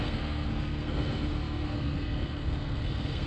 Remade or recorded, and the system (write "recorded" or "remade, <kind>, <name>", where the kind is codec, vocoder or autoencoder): remade, codec, SNAC